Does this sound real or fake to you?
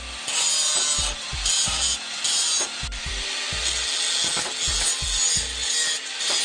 real